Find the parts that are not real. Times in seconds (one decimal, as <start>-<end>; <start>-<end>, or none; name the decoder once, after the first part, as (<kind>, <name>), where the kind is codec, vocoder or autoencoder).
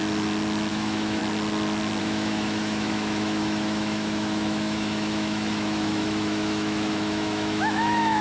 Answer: 0.7-1.2 (autoencoder, DAC-VAE); 2.0-8.2